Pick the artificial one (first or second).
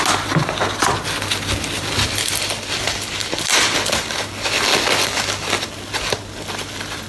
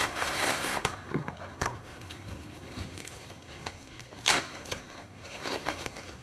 second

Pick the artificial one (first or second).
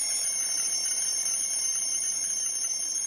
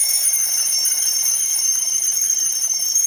second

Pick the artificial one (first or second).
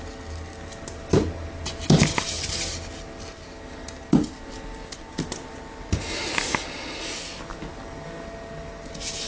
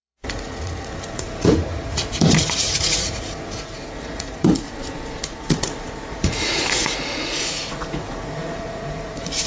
second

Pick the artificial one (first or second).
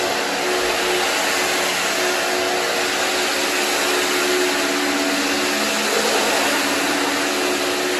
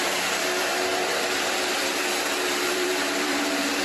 second